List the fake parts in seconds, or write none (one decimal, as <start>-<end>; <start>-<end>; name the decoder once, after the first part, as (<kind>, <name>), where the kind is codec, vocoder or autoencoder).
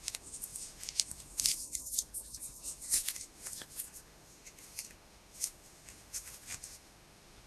0.0-7.5 (autoencoder, DAC-VAE)